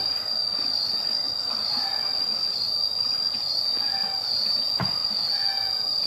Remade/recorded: recorded